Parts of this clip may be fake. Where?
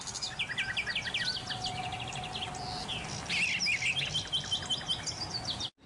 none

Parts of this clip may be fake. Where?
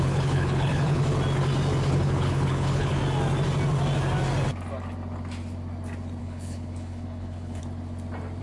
0.0-1.0 (codec, HILCodec); 1.9-3.0; 6.2-7.6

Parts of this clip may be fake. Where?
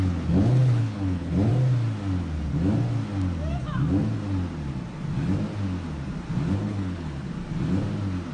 0.0-1.5 (codec, HILCodec); 6.5-7.3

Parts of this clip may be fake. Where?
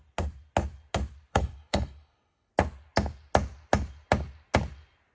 1.3-2.5 (codec, HILCodec)